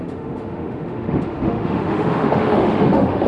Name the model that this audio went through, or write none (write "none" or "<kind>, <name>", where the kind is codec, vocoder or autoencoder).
autoencoder, DAC-VAE